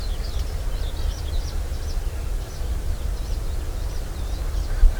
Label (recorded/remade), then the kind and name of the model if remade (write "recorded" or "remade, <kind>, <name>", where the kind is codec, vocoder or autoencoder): recorded